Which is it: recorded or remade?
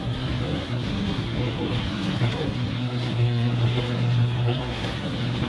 remade